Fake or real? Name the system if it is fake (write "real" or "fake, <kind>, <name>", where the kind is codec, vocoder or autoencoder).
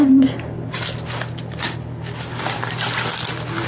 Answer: real